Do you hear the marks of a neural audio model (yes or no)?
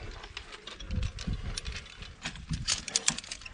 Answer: no